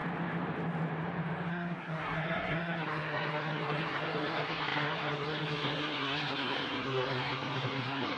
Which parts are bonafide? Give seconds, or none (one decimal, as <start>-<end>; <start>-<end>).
0.0-1.5